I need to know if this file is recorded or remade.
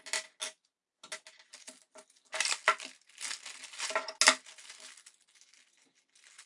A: recorded